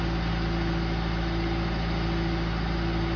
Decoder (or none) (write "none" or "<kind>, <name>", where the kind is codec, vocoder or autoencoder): none